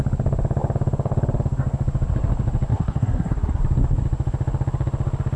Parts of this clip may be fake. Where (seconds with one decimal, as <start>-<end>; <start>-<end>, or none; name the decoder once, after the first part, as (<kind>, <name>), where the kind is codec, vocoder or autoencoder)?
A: 2.7-3.6 (codec, SNAC)